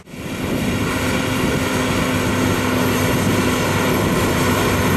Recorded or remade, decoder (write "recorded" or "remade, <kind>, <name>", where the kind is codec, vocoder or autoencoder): recorded